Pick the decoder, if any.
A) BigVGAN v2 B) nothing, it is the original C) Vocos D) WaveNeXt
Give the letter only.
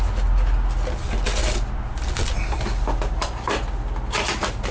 B